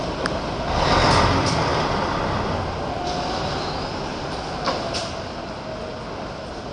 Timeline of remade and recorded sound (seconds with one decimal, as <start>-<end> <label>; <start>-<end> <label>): 0.0-4.1 recorded; 4.1-5.0 remade; 5.0-6.7 recorded